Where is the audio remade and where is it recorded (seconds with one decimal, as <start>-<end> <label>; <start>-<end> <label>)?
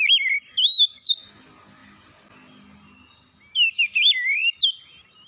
0.0-5.3 recorded